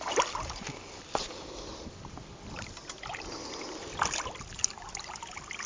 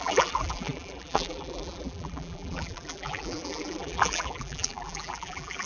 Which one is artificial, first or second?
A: second